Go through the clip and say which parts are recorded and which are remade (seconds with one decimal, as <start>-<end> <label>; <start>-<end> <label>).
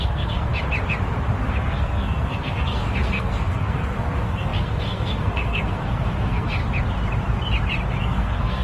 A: 0.0-0.5 remade; 0.5-1.4 recorded; 1.4-6.6 remade; 6.6-8.0 recorded; 8.0-8.6 remade